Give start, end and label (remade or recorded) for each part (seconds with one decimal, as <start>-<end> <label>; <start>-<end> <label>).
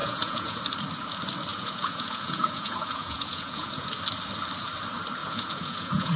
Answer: 0.0-0.6 remade; 0.6-1.5 recorded; 1.5-3.9 remade; 3.9-5.2 recorded; 5.2-6.2 remade